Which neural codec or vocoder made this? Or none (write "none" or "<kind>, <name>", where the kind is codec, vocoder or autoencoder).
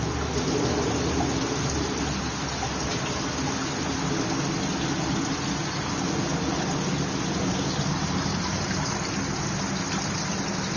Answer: none